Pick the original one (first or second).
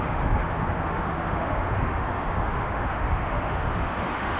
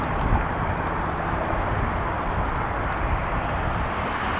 second